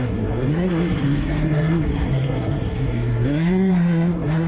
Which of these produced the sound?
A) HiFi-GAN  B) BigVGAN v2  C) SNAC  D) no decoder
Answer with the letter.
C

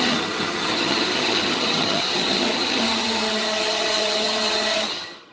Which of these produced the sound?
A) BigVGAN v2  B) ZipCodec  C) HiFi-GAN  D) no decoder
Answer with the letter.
C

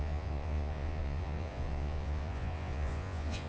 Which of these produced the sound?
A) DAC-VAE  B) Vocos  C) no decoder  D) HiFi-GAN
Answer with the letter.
B